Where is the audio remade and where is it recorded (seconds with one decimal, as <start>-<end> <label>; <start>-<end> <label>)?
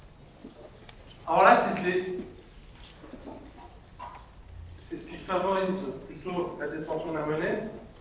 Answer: 0.0-5.2 recorded; 5.2-6.3 remade; 6.3-6.8 recorded; 6.8-8.0 remade